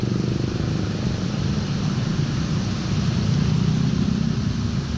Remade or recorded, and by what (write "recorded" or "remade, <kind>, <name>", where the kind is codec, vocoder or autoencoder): recorded